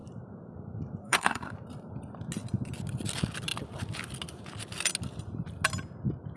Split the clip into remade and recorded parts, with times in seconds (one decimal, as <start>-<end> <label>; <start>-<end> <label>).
0.0-1.0 recorded; 1.0-1.5 remade; 1.5-6.4 recorded